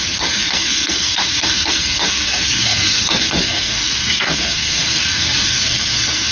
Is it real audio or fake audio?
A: fake